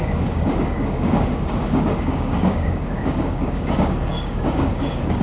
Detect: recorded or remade remade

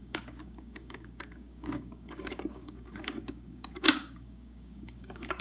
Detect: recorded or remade remade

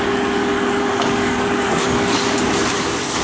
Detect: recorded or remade remade